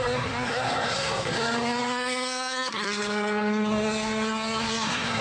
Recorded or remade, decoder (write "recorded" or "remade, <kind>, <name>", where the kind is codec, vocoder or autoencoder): remade, codec, SNAC